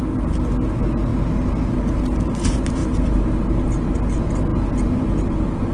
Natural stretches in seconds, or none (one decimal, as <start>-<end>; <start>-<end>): 0.0-5.7